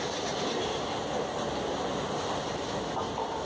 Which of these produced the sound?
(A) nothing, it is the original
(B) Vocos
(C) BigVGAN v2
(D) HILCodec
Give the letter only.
A